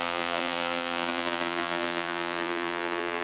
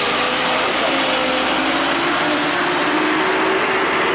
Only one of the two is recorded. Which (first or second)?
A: second